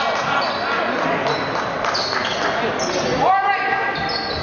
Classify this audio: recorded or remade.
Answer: recorded